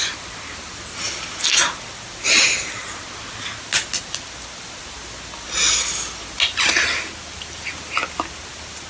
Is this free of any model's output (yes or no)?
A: yes